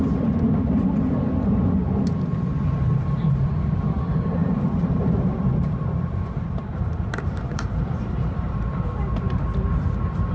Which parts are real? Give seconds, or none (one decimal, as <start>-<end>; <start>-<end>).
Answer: 0.0-4.4; 8.6-10.3